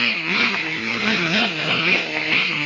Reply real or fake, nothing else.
fake